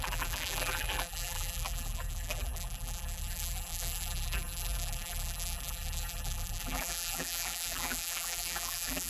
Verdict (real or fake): fake